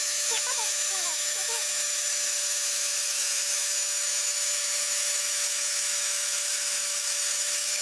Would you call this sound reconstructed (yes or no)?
yes